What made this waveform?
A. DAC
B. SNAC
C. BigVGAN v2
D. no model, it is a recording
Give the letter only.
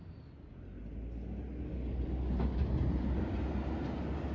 D